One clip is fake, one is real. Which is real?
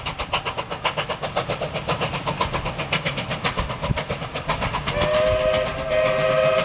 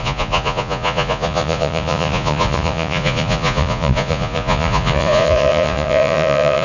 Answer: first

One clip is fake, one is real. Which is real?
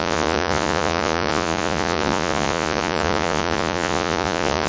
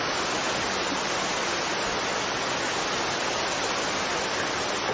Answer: second